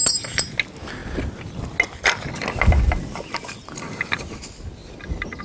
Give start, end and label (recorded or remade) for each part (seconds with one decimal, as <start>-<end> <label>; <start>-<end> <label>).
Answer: 0.0-5.4 recorded